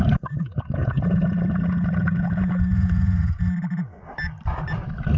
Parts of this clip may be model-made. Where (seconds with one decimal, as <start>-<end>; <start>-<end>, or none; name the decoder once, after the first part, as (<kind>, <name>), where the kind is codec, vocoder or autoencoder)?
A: 0.8-3.4 (vocoder, Vocos)